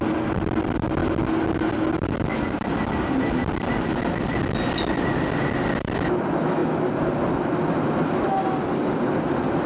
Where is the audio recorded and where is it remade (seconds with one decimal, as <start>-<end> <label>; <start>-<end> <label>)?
0.0-9.7 recorded